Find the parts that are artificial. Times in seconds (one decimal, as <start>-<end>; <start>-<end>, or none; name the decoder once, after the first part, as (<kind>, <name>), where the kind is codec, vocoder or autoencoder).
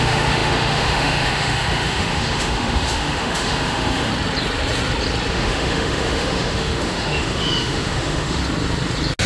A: 0.0-4.1 (autoencoder, DAC-VAE); 5.3-8.4